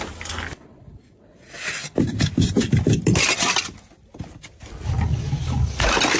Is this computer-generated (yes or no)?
no